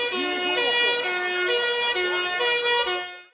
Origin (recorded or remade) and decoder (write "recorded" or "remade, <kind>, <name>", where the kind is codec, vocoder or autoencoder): recorded